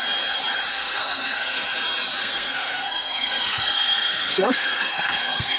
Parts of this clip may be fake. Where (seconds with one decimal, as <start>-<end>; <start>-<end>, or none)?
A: 0.7-1.6; 2.2-5.6